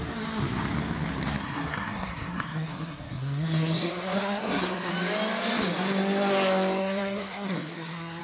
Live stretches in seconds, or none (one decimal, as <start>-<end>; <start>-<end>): 0.0-1.4; 4.9-6.8